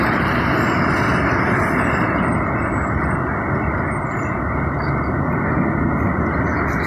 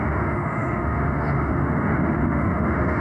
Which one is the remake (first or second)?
second